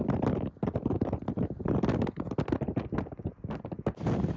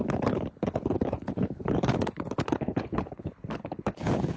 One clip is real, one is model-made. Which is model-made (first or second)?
second